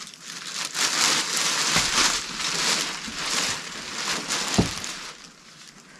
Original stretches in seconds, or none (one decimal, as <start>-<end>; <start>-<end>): 0.0-6.0